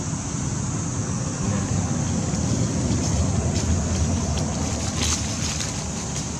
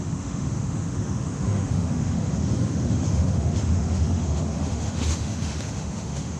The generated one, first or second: second